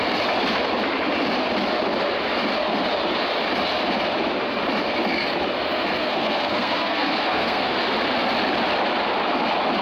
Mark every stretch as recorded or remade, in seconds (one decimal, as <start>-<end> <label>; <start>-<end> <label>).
0.0-6.0 recorded; 6.0-7.8 remade; 7.8-9.8 recorded